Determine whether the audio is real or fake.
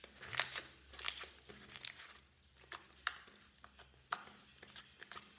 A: real